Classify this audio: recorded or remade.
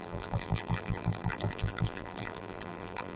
remade